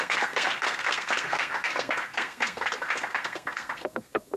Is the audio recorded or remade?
remade